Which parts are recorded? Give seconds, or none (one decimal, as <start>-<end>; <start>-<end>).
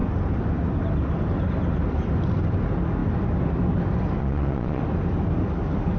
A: 0.0-4.2; 4.8-6.0